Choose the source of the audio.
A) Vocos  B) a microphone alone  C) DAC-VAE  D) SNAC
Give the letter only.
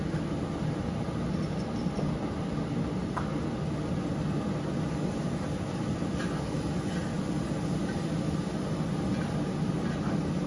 B